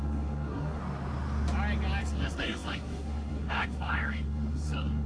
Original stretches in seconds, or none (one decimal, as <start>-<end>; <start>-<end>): 0.8-2.0